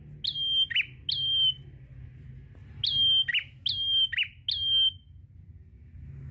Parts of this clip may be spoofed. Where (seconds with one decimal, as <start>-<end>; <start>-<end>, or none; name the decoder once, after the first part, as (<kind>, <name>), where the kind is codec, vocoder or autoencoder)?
none